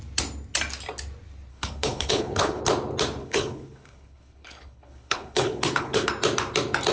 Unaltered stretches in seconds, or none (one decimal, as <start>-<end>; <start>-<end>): 0.0-1.5; 2.6-3.2; 6.1-6.9